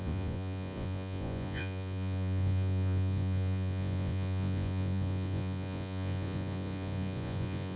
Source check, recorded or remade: remade